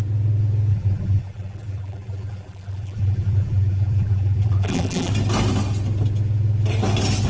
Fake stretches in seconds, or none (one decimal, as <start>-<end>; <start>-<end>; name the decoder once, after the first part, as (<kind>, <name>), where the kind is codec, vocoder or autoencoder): 0.7-5.1 (vocoder, BigVGAN v2)